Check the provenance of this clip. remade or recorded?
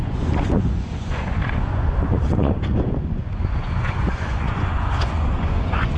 remade